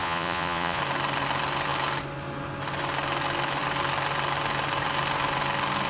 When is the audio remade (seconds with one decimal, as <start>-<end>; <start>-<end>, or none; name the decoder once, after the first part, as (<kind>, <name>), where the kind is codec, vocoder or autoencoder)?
0.0-0.8 (vocoder, Vocos)

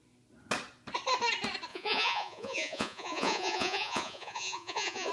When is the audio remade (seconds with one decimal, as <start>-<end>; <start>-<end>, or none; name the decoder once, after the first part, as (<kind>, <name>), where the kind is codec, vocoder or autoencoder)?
1.7-5.1 (vocoder, Vocos)

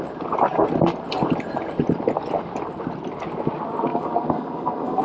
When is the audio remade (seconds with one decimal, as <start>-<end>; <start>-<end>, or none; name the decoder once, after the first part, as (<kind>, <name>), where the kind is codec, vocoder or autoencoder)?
3.9-5.0 (codec, DAC)

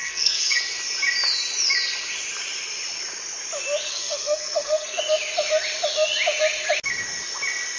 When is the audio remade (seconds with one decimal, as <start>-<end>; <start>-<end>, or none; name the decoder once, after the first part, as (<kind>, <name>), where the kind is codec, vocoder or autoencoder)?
0.0-0.6 (codec, SNAC); 3.9-5.0